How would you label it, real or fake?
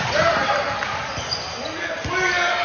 real